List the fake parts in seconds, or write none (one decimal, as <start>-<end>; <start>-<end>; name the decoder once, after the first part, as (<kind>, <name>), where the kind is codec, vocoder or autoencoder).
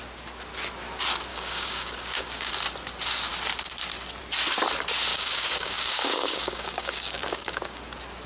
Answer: 1.3-2.5 (codec, DAC); 5.1-7.8